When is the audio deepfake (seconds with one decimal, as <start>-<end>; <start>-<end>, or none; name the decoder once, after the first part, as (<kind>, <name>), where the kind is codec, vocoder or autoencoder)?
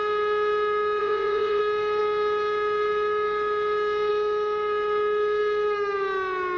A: 1.0-1.6 (vocoder, Vocos)